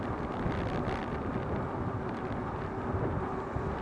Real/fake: real